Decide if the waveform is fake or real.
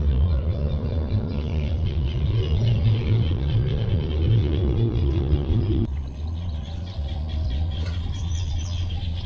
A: fake